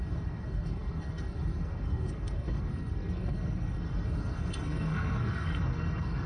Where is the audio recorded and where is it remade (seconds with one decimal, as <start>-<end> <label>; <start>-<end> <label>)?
0.0-6.3 remade